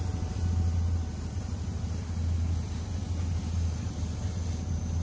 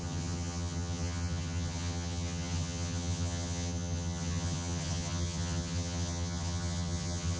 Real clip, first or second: first